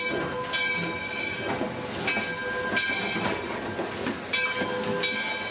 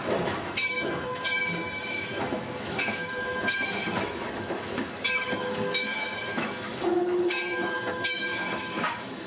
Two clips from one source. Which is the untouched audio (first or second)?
first